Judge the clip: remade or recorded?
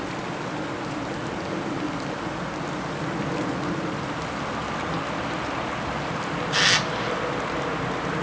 recorded